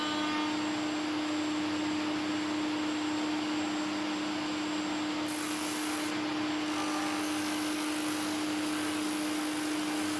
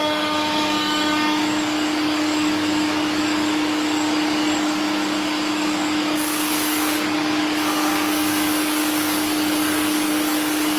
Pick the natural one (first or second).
first